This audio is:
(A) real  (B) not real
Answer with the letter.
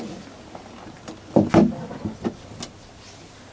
A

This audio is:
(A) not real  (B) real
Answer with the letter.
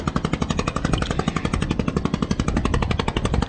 B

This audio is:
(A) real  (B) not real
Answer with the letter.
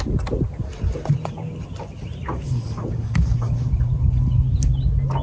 A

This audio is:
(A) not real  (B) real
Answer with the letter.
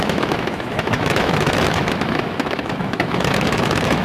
A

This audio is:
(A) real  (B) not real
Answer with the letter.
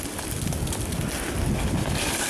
A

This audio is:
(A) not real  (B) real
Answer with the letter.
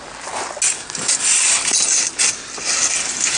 B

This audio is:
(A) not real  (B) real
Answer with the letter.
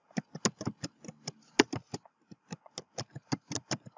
B